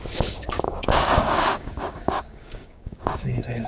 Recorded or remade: remade